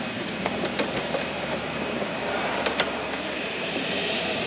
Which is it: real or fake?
fake